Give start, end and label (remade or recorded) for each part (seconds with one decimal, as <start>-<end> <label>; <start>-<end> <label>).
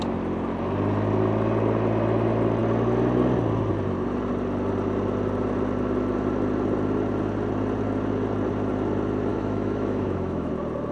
0.0-9.3 recorded; 9.3-10.5 remade; 10.5-10.9 recorded